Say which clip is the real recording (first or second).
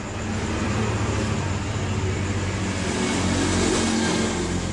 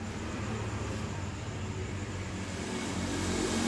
first